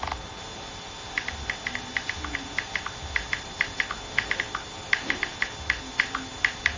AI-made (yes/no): no